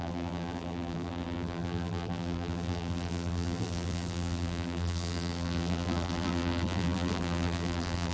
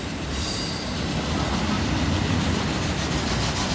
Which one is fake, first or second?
first